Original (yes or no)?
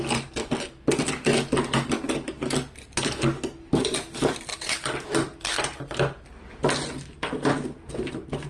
yes